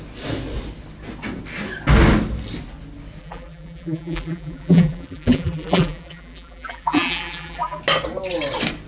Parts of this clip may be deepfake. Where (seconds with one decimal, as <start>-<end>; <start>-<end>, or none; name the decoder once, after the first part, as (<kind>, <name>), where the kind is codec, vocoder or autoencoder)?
3.2-7.8 (vocoder, BigVGAN v2)